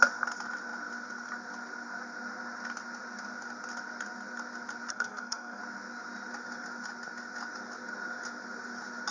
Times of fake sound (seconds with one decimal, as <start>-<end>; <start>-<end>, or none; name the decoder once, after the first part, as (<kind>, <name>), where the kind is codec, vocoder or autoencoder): 4.9-5.6 (codec, SNAC)

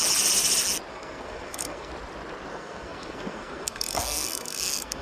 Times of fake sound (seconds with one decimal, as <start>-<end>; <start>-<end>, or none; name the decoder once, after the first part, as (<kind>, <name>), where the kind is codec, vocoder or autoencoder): 0.9-1.9 (codec, SNAC); 2.5-5.0

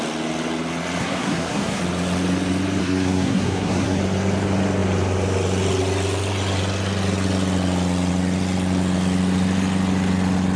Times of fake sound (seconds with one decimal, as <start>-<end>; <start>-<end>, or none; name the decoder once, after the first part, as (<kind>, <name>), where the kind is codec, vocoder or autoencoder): 1.0-1.8 (codec, SNAC); 2.8-4.0